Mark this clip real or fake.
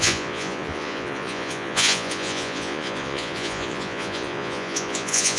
fake